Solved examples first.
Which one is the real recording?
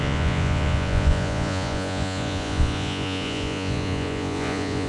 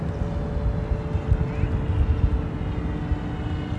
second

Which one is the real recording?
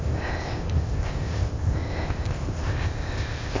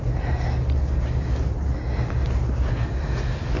second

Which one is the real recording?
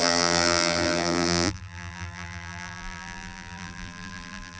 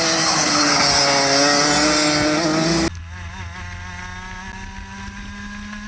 second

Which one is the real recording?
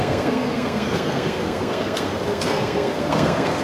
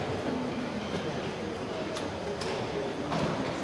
second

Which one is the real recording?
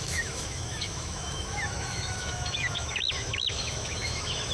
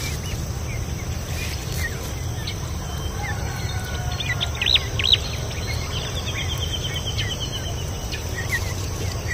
second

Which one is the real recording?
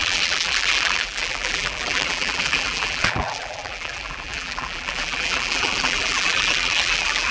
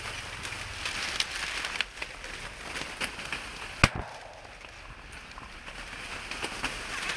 second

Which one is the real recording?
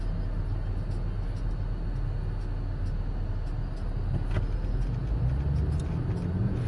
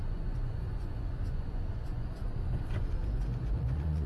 first